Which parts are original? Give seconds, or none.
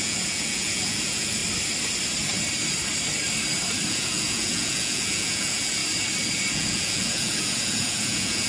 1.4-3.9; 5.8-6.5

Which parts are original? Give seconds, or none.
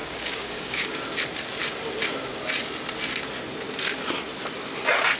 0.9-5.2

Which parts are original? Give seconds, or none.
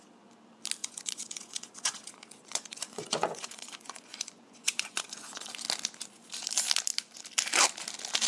0.0-0.8; 5.5-8.3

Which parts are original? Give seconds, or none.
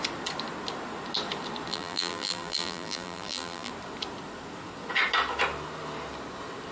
0.0-1.7; 3.7-6.7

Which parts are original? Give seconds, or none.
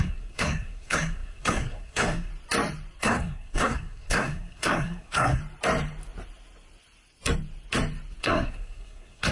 2.3-3.0; 5.4-8.2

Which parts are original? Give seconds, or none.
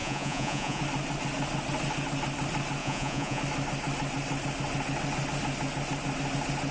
0.8-2.8; 3.4-6.7